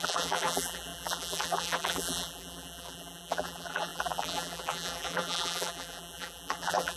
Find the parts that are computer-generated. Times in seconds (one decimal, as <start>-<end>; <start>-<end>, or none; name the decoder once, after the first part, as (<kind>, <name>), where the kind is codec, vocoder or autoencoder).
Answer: 0.0-7.0 (vocoder, BigVGAN v2)